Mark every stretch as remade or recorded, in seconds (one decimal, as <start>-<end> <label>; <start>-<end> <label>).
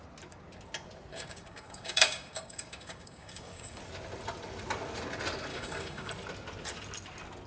0.0-1.1 recorded; 1.1-3.8 remade; 3.8-5.5 recorded; 5.5-6.1 remade; 6.1-7.5 recorded